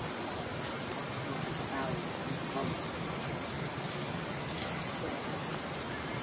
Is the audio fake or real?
real